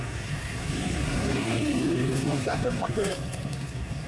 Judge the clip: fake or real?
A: fake